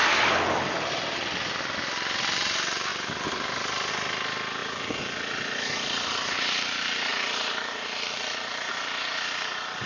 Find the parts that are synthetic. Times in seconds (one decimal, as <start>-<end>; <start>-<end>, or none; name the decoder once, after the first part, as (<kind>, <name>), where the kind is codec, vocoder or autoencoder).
7.1-8.7 (vocoder, BigVGAN v2)